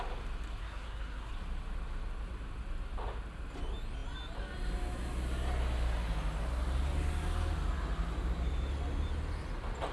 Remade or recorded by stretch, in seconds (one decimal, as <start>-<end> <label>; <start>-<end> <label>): 0.0-0.6 recorded; 0.6-1.3 remade; 1.3-9.9 recorded